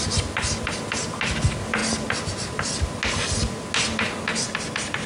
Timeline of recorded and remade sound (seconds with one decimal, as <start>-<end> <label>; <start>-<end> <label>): 0.0-1.8 recorded; 1.8-3.0 remade; 3.0-4.3 recorded; 4.3-5.1 remade